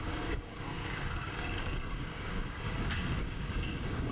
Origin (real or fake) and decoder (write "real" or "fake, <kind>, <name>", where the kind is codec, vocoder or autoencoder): fake, codec, DAC